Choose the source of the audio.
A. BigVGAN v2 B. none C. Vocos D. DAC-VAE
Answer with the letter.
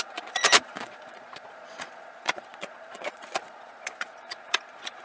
C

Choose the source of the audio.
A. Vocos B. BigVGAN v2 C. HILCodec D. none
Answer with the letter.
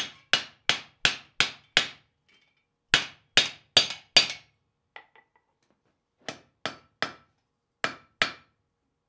D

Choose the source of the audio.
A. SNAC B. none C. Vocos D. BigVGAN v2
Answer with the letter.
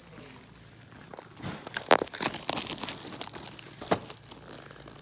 B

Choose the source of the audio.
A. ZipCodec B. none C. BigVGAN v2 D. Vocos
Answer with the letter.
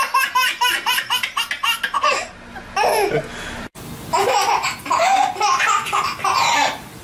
B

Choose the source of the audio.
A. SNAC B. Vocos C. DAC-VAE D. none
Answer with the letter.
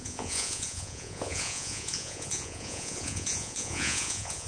B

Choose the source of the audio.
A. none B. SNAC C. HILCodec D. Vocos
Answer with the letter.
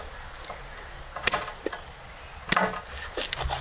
A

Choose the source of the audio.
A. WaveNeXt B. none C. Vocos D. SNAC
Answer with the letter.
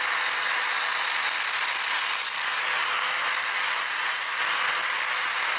B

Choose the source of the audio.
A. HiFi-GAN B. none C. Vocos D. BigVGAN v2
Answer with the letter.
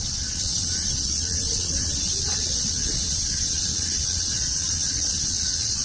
C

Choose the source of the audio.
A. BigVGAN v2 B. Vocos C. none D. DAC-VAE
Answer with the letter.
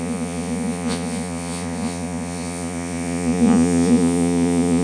B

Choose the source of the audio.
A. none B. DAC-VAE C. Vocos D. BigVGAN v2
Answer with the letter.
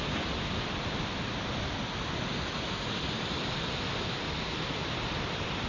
A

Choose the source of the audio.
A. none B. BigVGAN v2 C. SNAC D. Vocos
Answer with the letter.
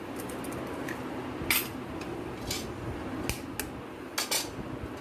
A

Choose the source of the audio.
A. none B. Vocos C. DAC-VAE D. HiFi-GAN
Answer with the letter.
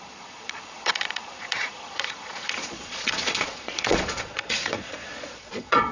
B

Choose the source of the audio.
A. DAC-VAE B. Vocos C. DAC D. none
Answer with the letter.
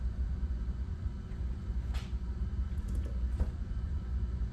B